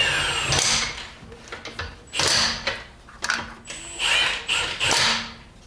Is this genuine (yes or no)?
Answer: yes